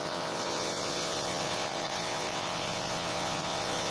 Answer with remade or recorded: remade